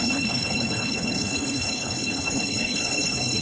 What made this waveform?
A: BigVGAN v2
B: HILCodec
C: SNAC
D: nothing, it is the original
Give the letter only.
B